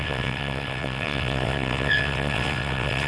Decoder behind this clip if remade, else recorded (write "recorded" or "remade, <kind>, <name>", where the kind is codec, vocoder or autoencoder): remade, vocoder, WaveNeXt